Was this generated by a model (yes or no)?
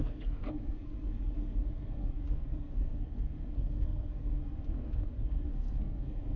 yes